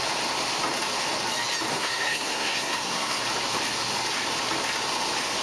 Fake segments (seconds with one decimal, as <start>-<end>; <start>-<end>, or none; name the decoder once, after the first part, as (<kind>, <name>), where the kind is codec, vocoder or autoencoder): 1.7-3.2 (codec, SNAC)